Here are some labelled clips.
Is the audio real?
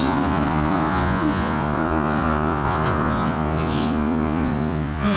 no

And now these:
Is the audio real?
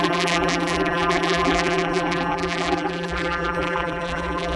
no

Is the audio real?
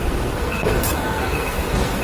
no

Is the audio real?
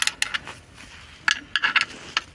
yes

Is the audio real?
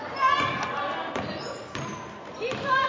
yes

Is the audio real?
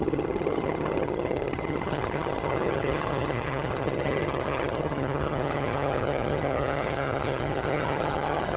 no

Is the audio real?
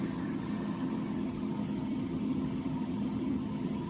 no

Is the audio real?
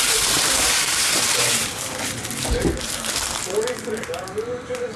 no